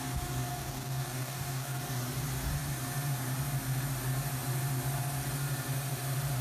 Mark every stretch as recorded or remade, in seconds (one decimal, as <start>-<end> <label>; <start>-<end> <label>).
0.0-0.5 recorded; 0.5-1.8 remade; 1.8-6.4 recorded